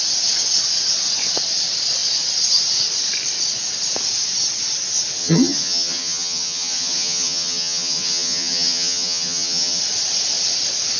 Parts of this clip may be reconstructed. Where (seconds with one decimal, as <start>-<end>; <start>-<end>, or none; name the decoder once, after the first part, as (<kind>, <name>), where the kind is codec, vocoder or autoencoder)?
5.2-9.8 (vocoder, HiFi-GAN)

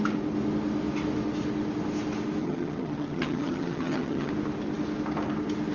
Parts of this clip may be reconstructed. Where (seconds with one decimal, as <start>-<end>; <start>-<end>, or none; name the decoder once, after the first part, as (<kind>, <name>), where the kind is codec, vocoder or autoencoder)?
2.4-4.3 (vocoder, HiFi-GAN)